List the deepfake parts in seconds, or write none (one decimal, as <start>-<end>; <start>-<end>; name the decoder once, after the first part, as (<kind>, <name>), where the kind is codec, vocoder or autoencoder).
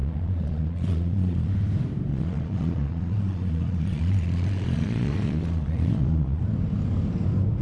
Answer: 0.0-1.5 (vocoder, Vocos); 2.1-6.4